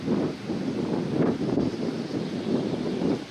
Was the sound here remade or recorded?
recorded